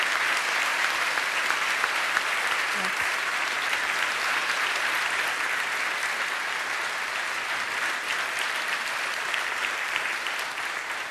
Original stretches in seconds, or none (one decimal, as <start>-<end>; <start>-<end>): 0.0-0.7; 2.7-8.1; 10.1-11.1